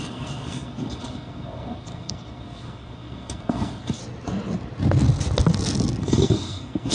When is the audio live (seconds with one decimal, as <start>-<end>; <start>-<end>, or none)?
4.0-6.0